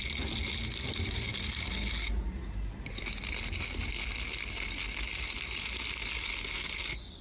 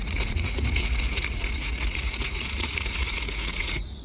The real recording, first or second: first